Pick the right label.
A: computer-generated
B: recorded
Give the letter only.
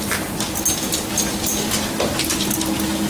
B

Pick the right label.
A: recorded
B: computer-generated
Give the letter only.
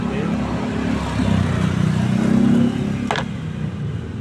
A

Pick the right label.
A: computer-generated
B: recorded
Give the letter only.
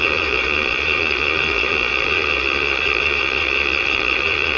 A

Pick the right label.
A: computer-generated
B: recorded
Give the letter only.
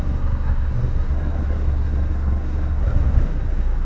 A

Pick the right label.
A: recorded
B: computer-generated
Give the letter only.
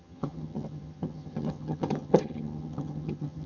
B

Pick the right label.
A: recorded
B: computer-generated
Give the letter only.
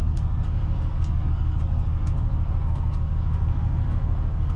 B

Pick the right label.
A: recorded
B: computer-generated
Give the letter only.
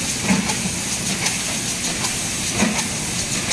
A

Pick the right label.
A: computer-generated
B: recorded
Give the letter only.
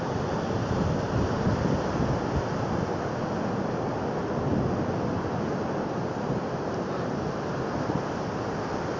B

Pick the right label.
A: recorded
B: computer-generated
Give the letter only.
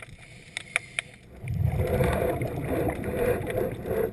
A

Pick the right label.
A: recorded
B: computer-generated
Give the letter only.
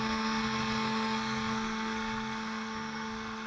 B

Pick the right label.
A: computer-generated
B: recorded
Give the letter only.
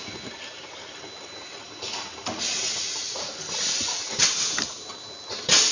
B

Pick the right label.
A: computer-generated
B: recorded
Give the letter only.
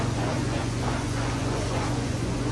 A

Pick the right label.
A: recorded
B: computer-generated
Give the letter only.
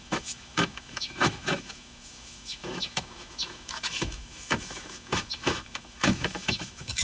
B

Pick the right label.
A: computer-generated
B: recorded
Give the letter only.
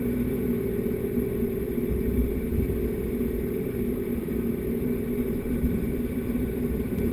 A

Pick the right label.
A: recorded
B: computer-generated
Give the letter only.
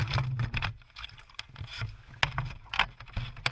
A